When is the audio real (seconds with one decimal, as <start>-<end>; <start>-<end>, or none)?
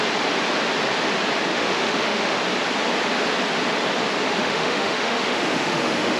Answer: 0.0-1.5; 2.4-4.4